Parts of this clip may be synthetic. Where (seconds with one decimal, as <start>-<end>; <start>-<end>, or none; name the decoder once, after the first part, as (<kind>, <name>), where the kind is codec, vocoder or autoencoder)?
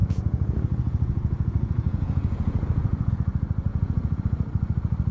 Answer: 0.0-3.1 (vocoder, Vocos); 3.7-4.2